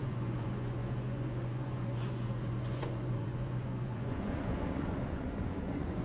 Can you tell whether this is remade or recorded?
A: remade